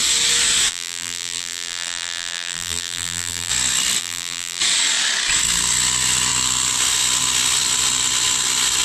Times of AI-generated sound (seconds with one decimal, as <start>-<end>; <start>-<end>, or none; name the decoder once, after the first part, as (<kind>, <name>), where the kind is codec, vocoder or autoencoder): 0.7-3.5 (vocoder, BigVGAN v2); 4.0-4.6